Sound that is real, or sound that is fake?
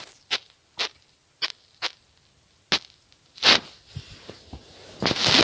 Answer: real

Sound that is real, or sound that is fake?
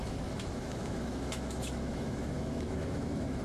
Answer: fake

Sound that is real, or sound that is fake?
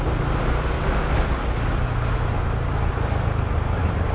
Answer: real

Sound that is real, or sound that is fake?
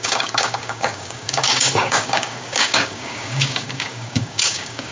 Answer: fake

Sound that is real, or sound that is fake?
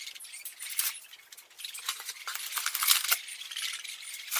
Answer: real